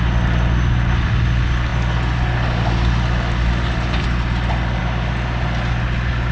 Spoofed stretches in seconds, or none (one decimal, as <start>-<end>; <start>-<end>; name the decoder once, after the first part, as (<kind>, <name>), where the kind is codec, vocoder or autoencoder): none